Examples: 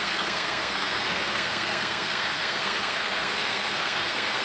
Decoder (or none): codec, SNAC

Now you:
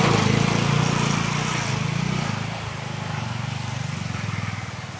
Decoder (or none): none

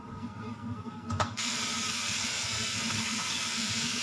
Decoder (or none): codec, SNAC